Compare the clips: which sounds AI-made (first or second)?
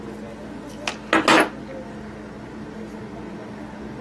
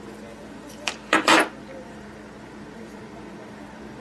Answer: second